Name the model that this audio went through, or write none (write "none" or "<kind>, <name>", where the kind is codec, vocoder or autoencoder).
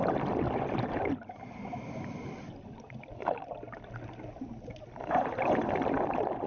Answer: none